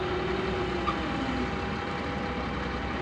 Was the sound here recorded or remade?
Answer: recorded